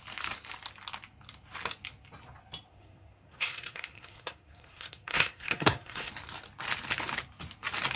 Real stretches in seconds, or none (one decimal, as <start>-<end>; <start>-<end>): 0.0-2.7; 6.1-8.0